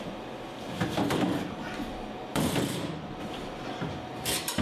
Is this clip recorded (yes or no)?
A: no